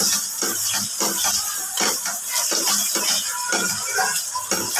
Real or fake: real